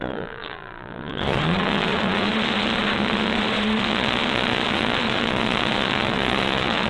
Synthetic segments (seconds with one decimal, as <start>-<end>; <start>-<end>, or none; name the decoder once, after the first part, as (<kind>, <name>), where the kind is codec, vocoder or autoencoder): 0.0-6.9 (vocoder, Vocos)